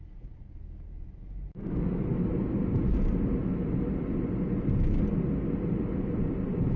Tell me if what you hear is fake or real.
real